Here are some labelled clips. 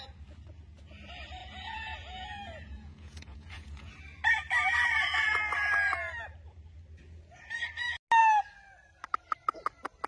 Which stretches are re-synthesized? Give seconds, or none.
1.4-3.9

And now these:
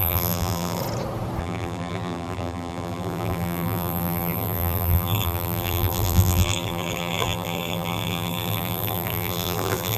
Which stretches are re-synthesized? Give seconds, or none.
0.0-0.8; 1.4-10.0

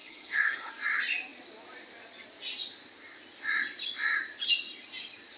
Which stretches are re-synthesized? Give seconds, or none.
0.0-0.7

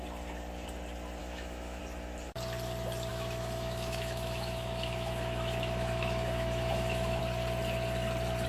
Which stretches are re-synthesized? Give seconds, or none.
1.2-1.8; 3.1-7.2

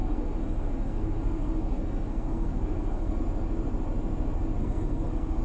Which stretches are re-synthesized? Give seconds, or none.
0.0-3.2; 4.6-5.4

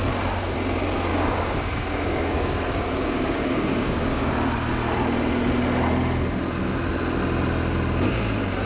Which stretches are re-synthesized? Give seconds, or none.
1.1-4.2